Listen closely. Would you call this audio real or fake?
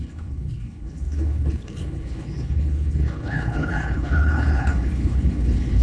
fake